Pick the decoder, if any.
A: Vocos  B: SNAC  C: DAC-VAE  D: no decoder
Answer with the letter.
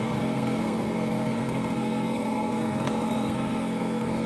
B